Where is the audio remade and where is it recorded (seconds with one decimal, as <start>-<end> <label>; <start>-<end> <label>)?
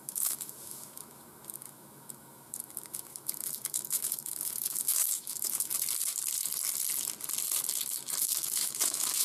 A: 0.0-5.7 remade; 5.7-8.2 recorded; 8.2-9.2 remade